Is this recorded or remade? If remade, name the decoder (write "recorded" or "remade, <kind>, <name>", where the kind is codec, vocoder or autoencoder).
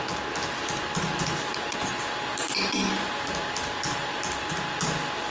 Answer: recorded